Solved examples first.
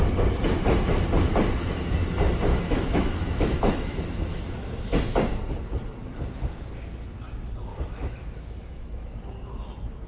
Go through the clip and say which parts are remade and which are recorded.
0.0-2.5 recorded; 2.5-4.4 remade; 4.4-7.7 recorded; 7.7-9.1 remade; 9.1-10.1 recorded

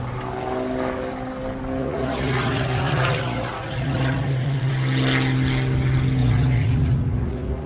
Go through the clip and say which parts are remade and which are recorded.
0.0-1.8 recorded; 1.8-4.7 remade; 4.7-6.2 recorded; 6.2-7.7 remade

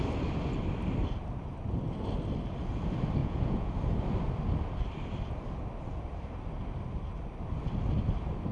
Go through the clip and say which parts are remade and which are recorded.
0.0-3.2 recorded; 3.2-3.7 remade; 3.7-8.5 recorded

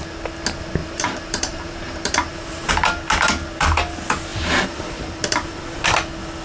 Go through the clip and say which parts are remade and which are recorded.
0.0-0.8 recorded; 0.8-2.7 remade; 2.7-4.3 recorded; 4.3-5.8 remade; 5.8-6.4 recorded

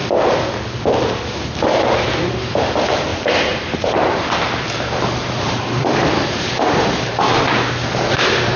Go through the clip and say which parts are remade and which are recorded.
0.0-3.1 recorded; 3.1-8.6 remade

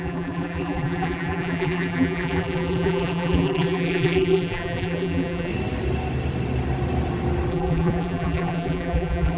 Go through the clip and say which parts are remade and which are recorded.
0.0-5.5 remade; 5.5-7.5 recorded; 7.5-9.4 remade